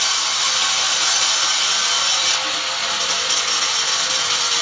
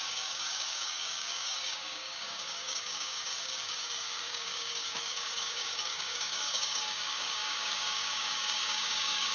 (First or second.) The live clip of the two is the first